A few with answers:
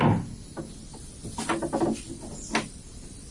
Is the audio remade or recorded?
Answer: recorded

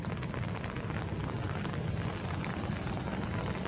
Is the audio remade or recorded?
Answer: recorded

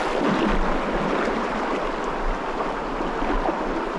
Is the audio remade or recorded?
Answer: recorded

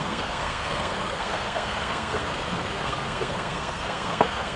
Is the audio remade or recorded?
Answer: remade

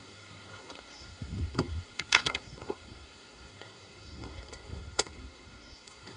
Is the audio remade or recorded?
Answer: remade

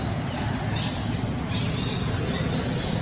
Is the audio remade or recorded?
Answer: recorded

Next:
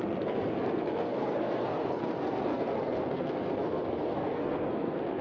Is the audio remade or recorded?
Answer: remade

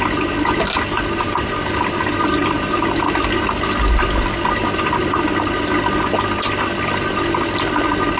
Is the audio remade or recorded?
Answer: recorded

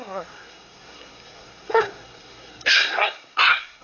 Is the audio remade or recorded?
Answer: remade